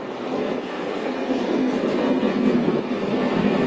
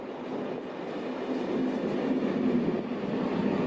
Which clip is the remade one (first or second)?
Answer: first